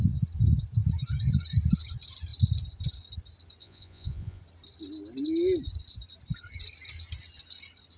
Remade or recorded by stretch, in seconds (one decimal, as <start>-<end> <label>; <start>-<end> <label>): 0.0-3.6 recorded; 3.6-4.4 remade; 4.4-8.0 recorded